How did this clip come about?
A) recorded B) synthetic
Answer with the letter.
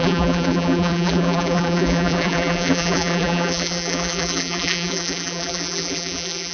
B